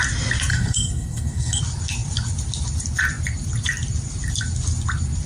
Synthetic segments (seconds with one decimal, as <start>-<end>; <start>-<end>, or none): 0.5-1.6